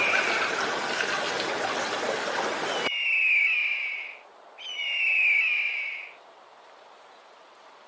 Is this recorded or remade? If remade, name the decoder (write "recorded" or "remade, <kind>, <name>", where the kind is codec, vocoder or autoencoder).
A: recorded